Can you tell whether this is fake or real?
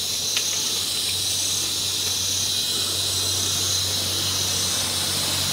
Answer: real